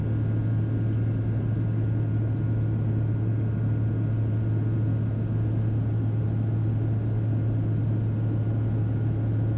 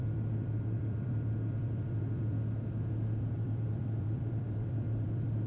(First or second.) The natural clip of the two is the first